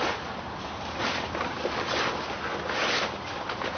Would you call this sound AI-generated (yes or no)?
no